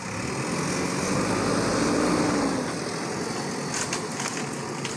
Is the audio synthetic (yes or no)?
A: no